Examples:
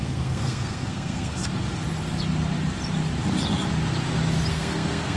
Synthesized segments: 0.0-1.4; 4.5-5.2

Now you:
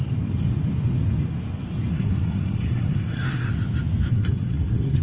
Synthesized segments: 1.9-3.5; 4.1-5.0

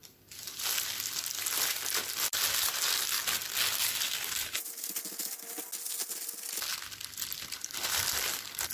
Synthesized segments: none

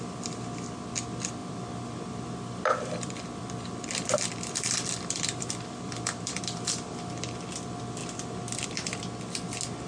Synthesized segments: 1.4-6.4; 8.0-9.0

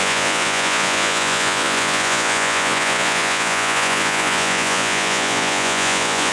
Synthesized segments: 0.0-6.3

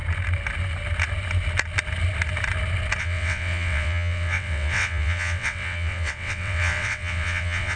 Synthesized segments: 3.0-7.8